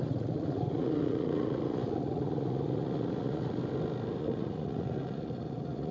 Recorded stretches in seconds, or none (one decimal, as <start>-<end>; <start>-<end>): 3.6-4.2

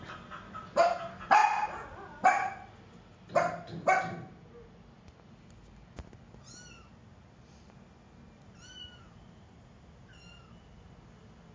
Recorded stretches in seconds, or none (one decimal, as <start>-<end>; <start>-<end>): 0.0-11.5

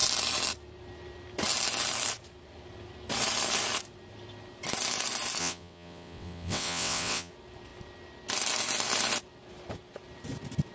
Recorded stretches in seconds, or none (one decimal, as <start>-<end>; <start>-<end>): 0.0-5.4; 7.3-10.7